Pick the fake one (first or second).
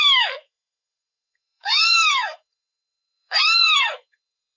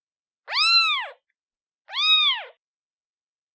first